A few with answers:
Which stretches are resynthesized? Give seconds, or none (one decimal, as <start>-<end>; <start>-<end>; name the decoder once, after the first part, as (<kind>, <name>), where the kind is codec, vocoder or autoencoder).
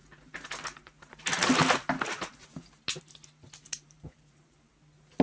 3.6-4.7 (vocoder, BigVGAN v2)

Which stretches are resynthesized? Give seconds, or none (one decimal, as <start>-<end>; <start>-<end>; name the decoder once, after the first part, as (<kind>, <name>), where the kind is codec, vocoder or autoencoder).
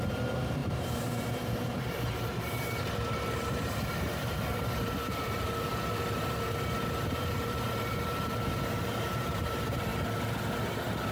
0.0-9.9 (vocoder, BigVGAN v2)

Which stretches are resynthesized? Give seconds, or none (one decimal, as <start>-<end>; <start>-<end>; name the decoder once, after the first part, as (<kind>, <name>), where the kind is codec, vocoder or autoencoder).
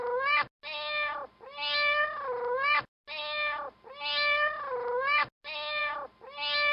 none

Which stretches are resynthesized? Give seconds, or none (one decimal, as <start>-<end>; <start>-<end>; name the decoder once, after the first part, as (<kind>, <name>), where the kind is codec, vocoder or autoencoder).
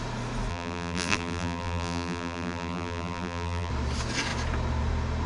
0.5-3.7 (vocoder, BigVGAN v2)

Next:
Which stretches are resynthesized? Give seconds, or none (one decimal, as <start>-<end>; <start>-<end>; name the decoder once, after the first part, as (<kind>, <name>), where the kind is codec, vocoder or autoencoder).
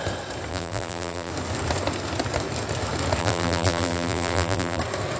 0.5-1.3 (vocoder, BigVGAN v2); 3.2-4.8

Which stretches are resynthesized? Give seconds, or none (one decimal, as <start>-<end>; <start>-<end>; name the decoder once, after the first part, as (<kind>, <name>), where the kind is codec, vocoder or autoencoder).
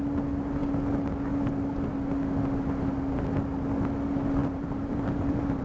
4.4-5.6 (vocoder, BigVGAN v2)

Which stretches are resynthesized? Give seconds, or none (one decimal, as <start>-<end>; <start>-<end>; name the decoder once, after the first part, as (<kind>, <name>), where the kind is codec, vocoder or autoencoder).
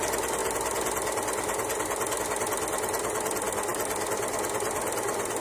none